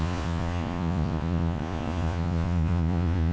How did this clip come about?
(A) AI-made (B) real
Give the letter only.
A